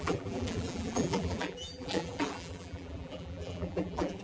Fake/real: fake